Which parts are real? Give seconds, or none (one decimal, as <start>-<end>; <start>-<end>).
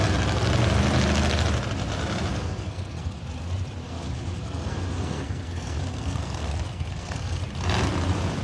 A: 0.0-2.3; 3.2-3.8; 7.4-8.4